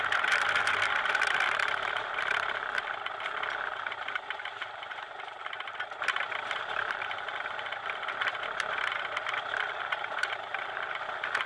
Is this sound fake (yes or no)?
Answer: yes